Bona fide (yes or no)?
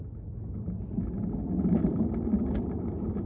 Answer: yes